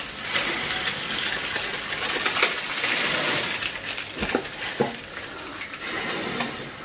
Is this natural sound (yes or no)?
yes